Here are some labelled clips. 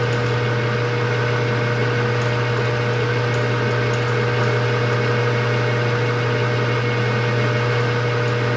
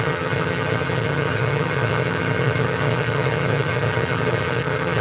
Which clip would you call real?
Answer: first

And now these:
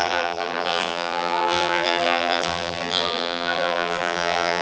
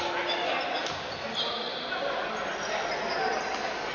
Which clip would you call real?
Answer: second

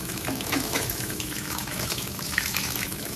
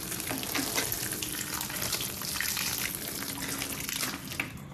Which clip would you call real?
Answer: second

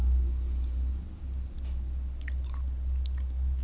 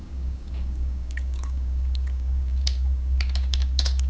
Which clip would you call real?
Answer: first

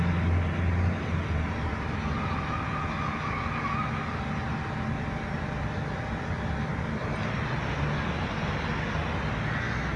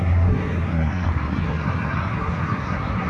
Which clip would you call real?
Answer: first